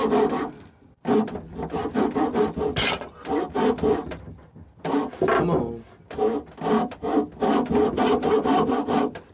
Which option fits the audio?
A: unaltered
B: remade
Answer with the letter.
A